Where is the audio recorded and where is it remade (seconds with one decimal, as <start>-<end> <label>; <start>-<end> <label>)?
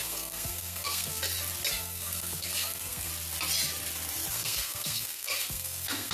0.0-1.2 remade; 1.2-1.7 recorded; 1.7-3.1 remade; 3.1-4.3 recorded; 4.3-6.1 remade